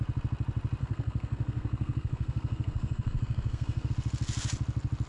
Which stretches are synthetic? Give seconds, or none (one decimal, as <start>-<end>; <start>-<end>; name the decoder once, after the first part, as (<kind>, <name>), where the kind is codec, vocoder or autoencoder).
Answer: 0.8-3.9 (codec, SNAC)

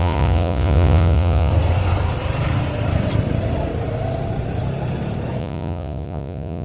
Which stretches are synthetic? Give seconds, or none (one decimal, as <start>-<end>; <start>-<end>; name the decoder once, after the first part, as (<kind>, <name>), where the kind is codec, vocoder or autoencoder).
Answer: 0.0-1.5 (vocoder, Vocos); 5.4-6.6

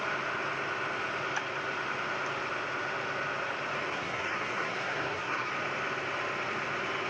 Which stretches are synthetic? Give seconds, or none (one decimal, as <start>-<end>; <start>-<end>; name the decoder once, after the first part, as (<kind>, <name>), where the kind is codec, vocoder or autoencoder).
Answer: 3.9-5.5 (codec, SNAC)